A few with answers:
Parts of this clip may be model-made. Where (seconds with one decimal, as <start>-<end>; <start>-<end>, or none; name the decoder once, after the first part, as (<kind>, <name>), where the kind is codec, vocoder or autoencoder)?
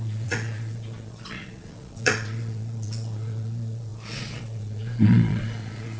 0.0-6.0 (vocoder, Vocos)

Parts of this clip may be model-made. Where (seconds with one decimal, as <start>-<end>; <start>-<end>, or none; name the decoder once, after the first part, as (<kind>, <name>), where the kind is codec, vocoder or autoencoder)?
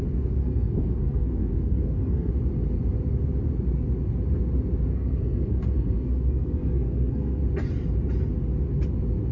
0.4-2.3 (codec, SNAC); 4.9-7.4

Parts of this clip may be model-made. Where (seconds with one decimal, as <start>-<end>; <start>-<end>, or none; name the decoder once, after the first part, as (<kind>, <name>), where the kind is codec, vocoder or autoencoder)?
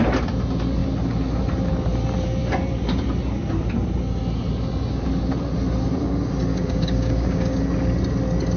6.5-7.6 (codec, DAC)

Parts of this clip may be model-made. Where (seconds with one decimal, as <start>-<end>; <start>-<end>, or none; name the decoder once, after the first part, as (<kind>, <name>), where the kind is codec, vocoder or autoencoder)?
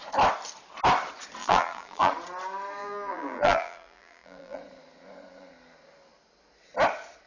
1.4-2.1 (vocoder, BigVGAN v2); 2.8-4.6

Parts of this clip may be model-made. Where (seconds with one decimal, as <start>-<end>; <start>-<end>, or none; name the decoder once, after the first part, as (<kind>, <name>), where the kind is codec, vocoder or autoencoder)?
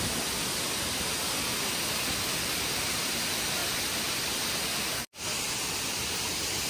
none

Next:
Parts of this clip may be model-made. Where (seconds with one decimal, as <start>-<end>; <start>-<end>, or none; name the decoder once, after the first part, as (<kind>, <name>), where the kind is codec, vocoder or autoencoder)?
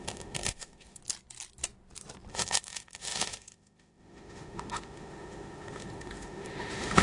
0.0-1.0 (autoencoder, DAC-VAE); 2.3-7.0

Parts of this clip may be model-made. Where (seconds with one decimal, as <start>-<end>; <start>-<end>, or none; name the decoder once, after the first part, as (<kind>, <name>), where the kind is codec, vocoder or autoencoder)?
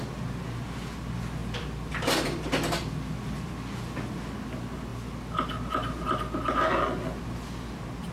1.4-3.1 (vocoder, BigVGAN v2)